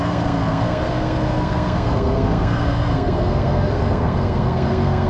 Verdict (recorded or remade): remade